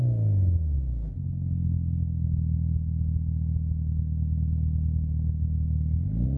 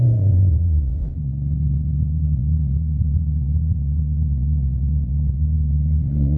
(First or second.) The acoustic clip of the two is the first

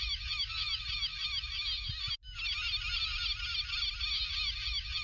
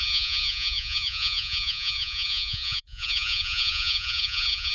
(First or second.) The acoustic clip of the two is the first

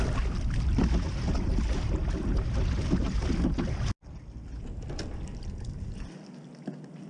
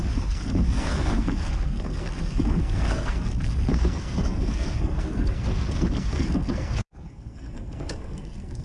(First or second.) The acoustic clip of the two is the first